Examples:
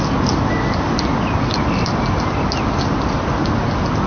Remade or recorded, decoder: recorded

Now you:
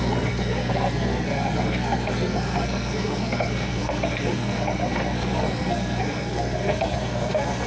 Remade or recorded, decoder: remade, codec, SNAC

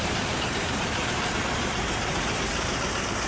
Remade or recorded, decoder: remade, vocoder, BigVGAN v2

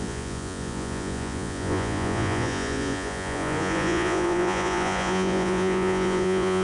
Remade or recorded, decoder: remade, vocoder, Vocos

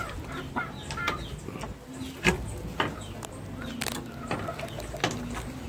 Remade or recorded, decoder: recorded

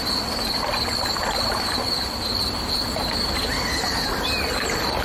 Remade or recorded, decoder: recorded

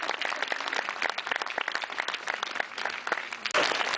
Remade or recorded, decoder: recorded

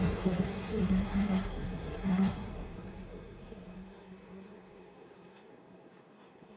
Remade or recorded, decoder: remade, codec, SNAC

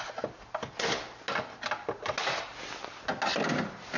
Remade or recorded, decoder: recorded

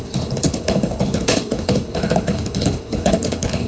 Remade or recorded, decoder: remade, codec, HILCodec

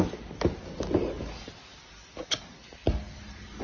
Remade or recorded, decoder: recorded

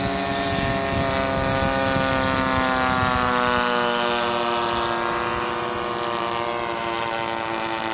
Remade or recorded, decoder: recorded